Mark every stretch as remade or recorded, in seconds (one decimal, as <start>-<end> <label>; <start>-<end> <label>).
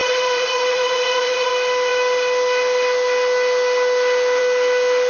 0.0-1.5 remade; 1.5-5.1 recorded